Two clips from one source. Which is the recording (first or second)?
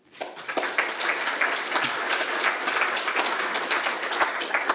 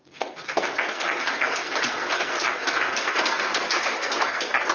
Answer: first